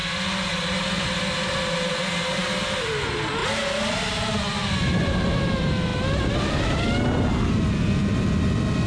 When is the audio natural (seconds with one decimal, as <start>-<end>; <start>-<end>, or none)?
0.0-8.9